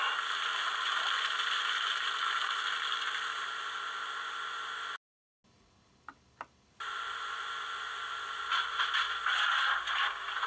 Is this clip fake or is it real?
real